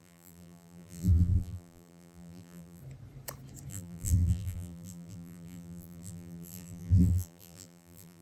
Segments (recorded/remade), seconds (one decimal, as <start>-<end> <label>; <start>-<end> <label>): 0.0-2.8 remade; 2.8-3.7 recorded; 3.7-8.2 remade